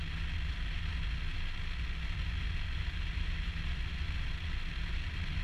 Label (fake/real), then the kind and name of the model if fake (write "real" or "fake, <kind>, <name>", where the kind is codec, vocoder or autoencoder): real